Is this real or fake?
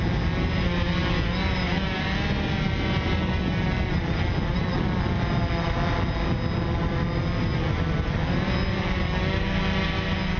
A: real